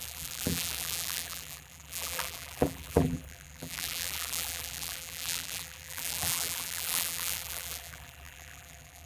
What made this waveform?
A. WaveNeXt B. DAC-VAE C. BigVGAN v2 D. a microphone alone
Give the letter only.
C